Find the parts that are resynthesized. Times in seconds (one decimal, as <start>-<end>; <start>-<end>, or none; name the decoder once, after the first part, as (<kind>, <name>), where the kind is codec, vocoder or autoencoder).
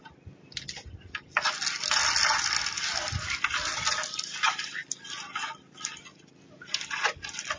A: none